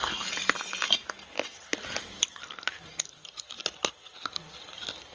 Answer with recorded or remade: recorded